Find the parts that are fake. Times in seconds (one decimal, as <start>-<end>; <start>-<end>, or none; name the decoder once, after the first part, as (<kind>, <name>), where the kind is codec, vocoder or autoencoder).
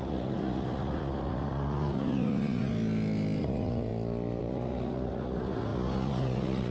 0.0-2.7 (vocoder, Vocos); 3.4-3.9; 4.4-6.7